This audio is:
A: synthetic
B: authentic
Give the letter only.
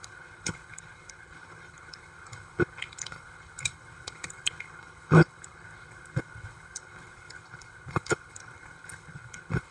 A